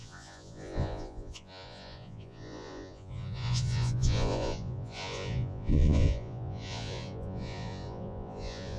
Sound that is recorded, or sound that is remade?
remade